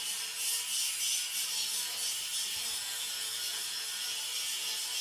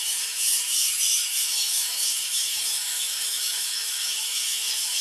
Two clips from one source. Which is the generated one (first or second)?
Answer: second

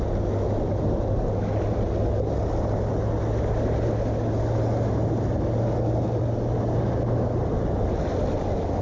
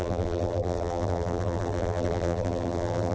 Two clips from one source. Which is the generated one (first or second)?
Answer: second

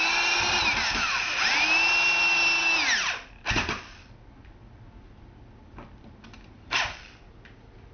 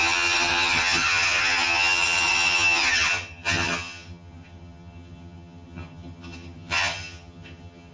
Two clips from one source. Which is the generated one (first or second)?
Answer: second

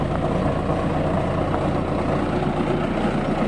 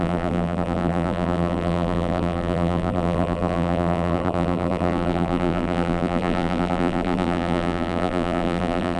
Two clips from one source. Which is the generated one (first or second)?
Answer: second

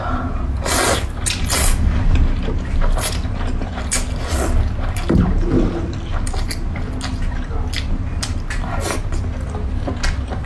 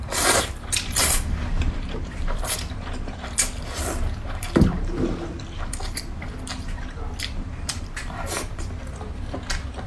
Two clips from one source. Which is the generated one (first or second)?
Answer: second